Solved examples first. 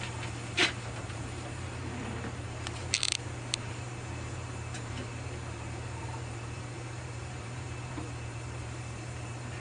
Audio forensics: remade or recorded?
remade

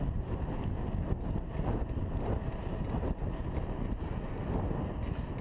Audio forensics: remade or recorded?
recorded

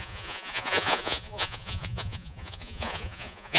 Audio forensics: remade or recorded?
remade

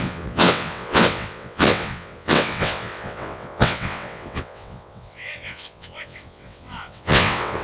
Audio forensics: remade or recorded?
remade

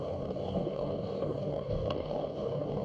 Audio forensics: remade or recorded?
remade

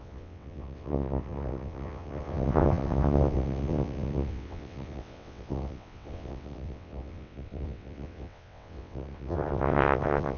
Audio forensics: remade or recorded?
remade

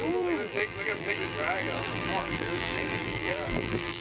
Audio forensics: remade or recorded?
remade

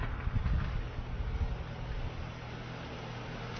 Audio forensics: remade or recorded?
recorded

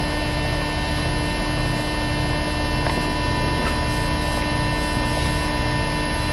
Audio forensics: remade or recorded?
recorded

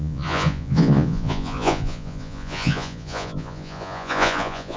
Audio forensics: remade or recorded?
remade